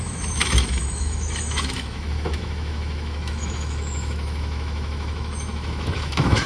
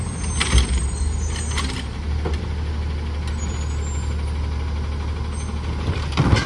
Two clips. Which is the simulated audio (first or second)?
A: first